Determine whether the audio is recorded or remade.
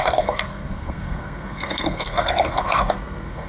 remade